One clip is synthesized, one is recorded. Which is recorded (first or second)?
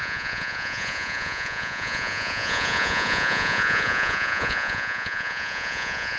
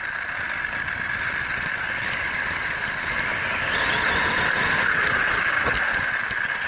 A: second